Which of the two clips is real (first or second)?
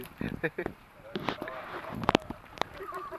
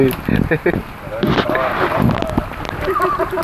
second